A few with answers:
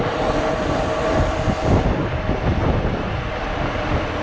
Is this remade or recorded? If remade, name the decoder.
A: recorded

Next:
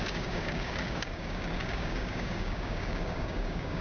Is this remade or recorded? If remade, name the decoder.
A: remade, codec, DAC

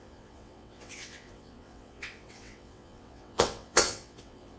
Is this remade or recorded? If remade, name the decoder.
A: remade, vocoder, WaveNeXt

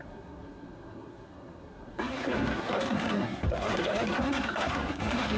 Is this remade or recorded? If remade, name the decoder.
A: remade, codec, SNAC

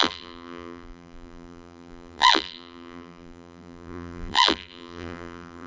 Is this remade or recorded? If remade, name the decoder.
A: remade, vocoder, BigVGAN v2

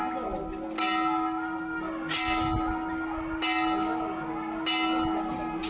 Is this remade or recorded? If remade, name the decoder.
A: recorded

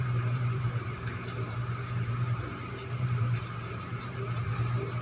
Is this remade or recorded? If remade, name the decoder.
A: remade, vocoder, BigVGAN v2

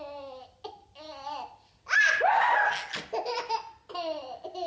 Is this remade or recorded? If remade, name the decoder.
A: recorded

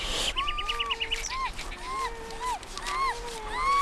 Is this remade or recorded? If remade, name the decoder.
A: recorded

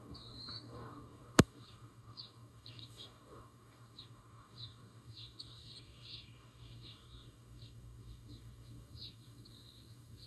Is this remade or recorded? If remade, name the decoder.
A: remade, codec, DAC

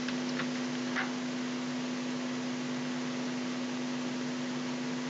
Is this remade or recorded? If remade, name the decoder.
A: recorded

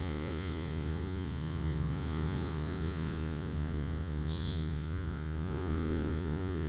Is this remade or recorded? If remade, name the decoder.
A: remade, vocoder, Vocos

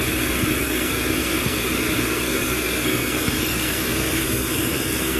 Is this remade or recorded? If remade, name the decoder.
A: remade, codec, SNAC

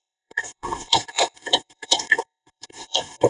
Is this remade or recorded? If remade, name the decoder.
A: remade, codec, SNAC